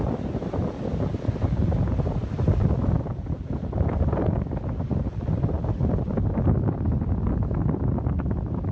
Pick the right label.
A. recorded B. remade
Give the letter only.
A